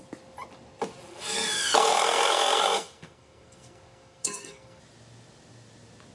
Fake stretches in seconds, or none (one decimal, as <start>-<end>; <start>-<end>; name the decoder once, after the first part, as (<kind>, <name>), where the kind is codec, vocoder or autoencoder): 1.1-4.8 (codec, SNAC)